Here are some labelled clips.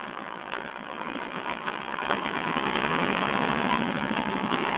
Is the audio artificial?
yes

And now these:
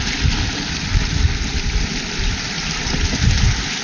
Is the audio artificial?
no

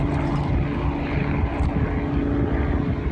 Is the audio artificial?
no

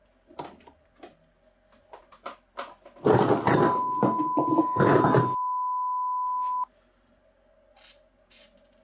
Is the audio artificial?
no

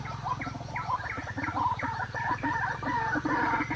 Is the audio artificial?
yes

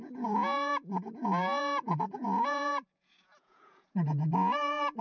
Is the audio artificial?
yes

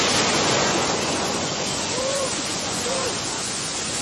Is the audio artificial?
yes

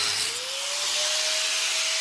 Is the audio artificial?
no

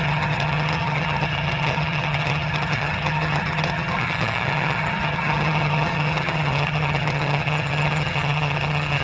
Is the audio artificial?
yes